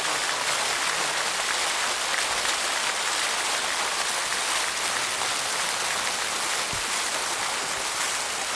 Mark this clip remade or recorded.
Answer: recorded